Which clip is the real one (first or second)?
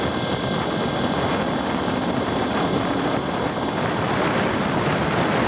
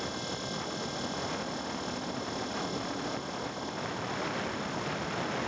second